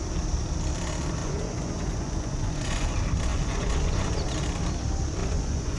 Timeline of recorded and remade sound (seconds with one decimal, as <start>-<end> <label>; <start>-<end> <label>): 0.0-1.2 recorded; 1.2-2.9 remade; 2.9-3.3 recorded; 3.3-4.1 remade; 4.1-5.2 recorded; 5.2-5.8 remade

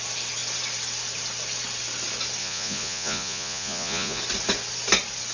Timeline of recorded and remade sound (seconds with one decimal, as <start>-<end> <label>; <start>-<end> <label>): 0.0-2.4 recorded; 2.4-4.2 remade; 4.2-5.3 recorded

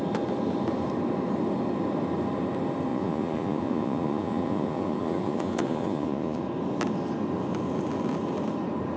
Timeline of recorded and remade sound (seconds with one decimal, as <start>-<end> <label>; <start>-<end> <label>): 0.0-2.9 recorded; 2.9-6.4 remade; 6.4-9.0 recorded

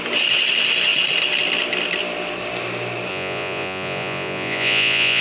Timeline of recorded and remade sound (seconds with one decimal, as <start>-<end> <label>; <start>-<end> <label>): 0.0-3.1 recorded; 3.1-5.2 remade

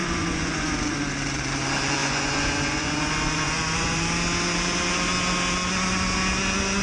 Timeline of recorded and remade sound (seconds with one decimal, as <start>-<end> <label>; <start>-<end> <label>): 0.0-0.7 remade; 0.7-2.0 recorded; 2.0-4.0 remade; 4.0-6.8 recorded